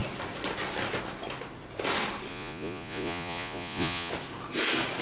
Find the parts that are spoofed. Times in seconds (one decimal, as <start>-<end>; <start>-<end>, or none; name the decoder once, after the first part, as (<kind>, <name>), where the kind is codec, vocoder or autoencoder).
2.3-4.1 (vocoder, Vocos)